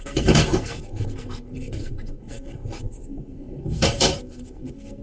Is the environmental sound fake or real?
fake